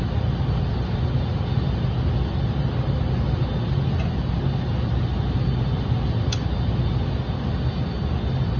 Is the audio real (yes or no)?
yes